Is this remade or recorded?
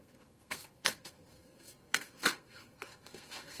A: remade